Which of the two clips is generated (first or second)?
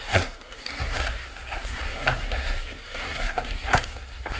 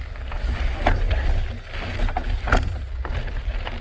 first